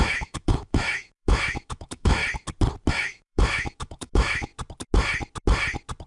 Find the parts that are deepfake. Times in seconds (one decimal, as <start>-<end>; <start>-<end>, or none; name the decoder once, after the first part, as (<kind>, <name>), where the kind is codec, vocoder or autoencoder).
0.0-2.2 (autoencoder, DAC-VAE); 2.9-4.5